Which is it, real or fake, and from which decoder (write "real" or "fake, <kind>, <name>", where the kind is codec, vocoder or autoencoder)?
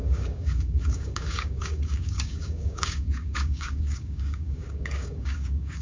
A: fake, codec, DAC